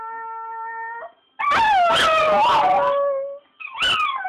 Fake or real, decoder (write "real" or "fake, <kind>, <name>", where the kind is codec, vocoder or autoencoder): real